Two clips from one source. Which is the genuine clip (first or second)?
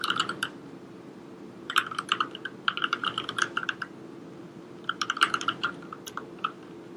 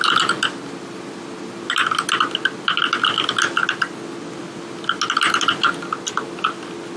second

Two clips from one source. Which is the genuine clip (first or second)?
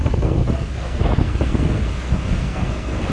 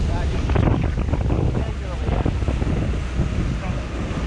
second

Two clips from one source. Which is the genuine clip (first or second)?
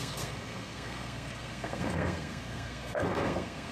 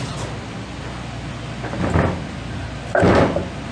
second